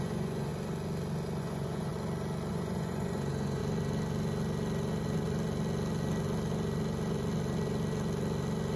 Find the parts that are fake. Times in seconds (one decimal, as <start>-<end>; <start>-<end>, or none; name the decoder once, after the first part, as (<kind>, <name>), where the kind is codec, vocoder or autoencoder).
0.0-0.5 (vocoder, Vocos); 1.4-1.9; 2.5-3.6